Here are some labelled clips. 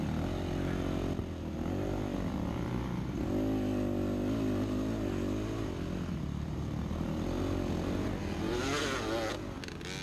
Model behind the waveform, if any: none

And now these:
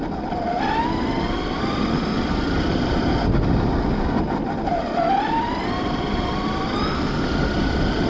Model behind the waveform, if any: none